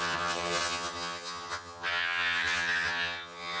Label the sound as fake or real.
fake